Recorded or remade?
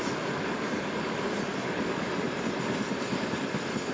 recorded